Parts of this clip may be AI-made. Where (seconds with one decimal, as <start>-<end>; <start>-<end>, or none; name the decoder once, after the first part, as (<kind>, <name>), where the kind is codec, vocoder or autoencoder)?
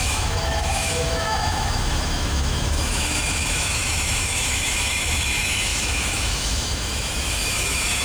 0.0-8.0 (autoencoder, DAC-VAE)